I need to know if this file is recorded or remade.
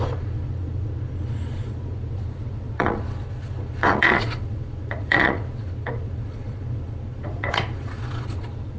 remade